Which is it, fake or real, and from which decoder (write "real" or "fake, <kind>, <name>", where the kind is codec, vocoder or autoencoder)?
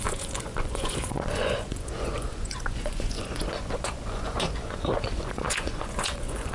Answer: fake, vocoder, Vocos